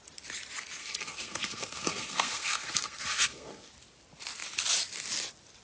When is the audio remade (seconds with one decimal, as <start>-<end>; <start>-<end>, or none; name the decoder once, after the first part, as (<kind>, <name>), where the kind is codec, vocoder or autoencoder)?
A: 0.8-3.7 (codec, SNAC)